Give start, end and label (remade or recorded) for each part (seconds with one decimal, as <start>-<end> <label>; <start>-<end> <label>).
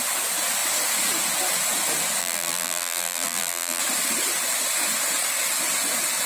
0.0-2.2 recorded; 2.2-3.8 remade; 3.8-6.3 recorded